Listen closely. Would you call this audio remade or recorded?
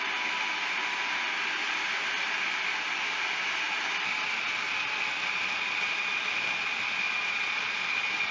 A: recorded